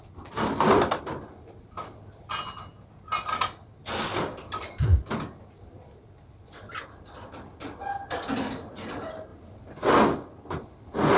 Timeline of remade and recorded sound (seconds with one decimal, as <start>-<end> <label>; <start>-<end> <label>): 0.0-11.2 recorded

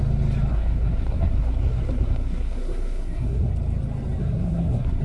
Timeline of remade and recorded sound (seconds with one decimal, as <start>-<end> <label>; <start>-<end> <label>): 0.0-0.5 recorded; 0.5-3.5 remade; 3.5-4.2 recorded; 4.2-5.0 remade